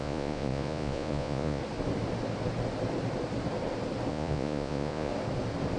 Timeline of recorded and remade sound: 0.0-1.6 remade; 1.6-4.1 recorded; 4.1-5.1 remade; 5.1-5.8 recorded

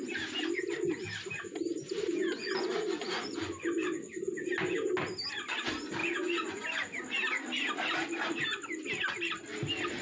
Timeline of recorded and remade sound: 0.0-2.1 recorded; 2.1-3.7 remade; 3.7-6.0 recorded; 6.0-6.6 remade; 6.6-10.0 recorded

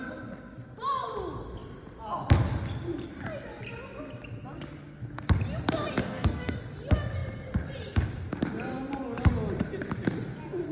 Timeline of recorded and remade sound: 0.0-6.0 recorded; 6.0-6.6 remade; 6.6-10.7 recorded

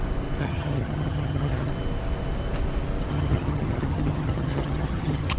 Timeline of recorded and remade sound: 0.0-0.4 recorded; 0.4-1.7 remade; 1.7-3.1 recorded; 3.1-5.4 remade

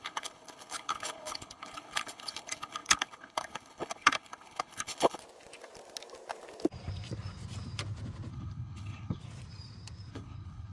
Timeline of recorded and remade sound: 0.0-5.2 remade; 5.2-8.3 recorded; 8.3-9.2 remade; 9.2-10.1 recorded; 10.1-10.7 remade

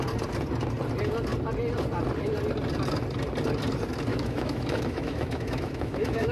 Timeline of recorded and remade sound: 0.0-4.1 recorded; 4.1-6.3 remade